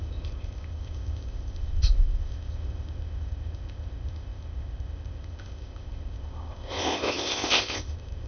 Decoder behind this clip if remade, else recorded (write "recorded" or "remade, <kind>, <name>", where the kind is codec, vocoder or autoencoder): remade, codec, ZipCodec